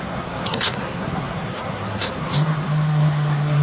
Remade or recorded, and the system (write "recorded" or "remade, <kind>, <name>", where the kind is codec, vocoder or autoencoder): remade, codec, SNAC